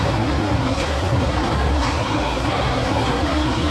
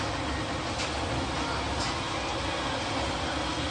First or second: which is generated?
first